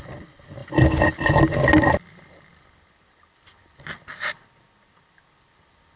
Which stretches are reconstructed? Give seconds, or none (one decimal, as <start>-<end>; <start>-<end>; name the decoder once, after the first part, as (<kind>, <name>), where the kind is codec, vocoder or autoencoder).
none